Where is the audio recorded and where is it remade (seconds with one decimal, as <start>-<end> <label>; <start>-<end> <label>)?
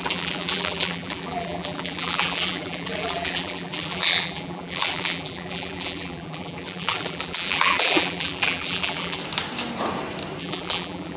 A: 0.0-9.2 remade; 9.2-10.4 recorded; 10.4-11.2 remade